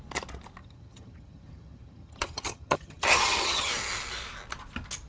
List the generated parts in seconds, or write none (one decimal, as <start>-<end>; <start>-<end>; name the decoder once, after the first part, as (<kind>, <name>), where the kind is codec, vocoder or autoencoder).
0.6-3.7 (vocoder, HiFi-GAN)

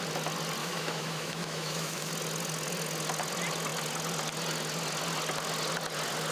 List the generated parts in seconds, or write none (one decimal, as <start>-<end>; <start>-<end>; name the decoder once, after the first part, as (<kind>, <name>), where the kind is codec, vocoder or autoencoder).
0.6-2.1 (autoencoder, DAC-VAE)

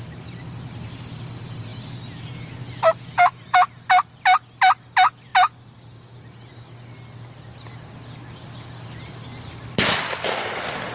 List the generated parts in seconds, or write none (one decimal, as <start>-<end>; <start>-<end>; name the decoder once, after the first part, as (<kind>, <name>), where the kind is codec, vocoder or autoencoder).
none

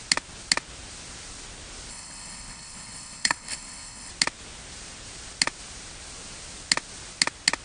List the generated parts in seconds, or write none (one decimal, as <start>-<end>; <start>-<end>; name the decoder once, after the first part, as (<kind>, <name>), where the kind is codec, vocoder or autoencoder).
1.9-4.1 (codec, HILCodec)

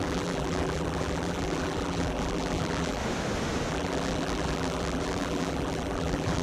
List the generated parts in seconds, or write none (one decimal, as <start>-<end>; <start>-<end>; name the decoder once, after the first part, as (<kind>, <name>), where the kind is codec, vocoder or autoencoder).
0.0-3.0 (vocoder, BigVGAN v2); 3.7-6.4

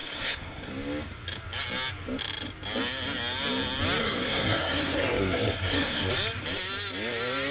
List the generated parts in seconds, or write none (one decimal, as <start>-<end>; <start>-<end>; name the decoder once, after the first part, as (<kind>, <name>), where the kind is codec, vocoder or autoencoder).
0.0-0.7 (codec, SNAC); 4.0-6.1